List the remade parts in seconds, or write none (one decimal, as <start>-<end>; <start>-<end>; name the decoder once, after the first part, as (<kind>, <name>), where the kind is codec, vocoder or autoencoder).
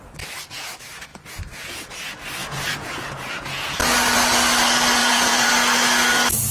1.1-2.0 (vocoder, Vocos); 2.4-3.8; 5.0-5.5